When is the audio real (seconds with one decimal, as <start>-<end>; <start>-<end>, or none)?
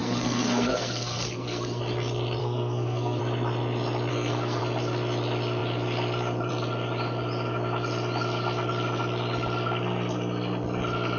1.8-2.4; 3.2-4.1; 4.6-11.2